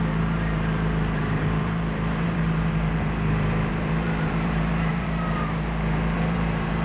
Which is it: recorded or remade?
remade